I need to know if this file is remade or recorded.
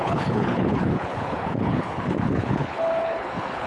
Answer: remade